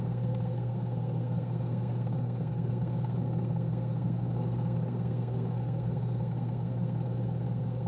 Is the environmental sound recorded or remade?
remade